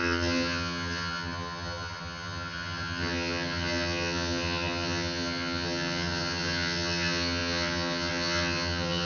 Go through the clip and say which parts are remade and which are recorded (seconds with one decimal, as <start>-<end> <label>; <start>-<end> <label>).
0.0-9.0 remade